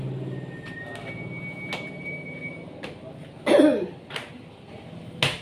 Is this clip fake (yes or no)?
no